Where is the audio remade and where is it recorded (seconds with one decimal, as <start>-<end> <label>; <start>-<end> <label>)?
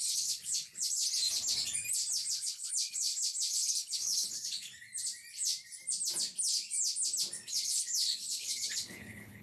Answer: 0.0-1.0 remade; 1.0-2.3 recorded; 2.3-4.7 remade; 4.7-7.5 recorded; 7.5-9.4 remade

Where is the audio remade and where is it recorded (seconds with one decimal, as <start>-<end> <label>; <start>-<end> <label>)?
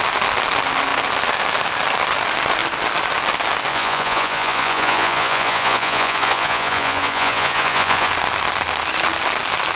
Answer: 0.0-3.7 recorded; 3.7-8.1 remade; 8.1-9.8 recorded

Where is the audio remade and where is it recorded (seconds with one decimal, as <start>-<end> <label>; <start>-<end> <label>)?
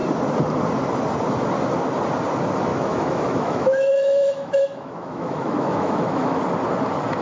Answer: 0.0-2.7 recorded; 2.7-6.4 remade; 6.4-7.2 recorded